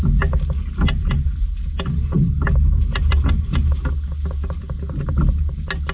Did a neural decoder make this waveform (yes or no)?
no